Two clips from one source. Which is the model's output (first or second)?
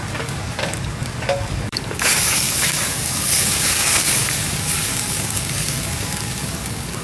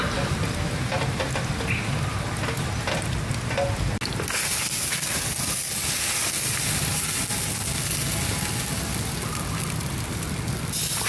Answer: first